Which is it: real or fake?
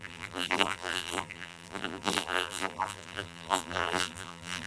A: fake